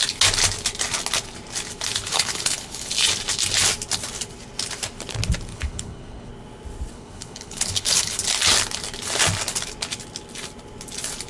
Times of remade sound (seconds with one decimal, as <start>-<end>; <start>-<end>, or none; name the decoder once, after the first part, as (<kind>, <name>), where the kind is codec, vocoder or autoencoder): 2.1-2.9 (codec, HILCodec); 5.5-6.3; 6.9-8.2